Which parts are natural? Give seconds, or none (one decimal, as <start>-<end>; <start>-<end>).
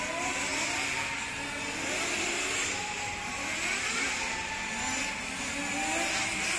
0.0-2.3; 3.3-6.6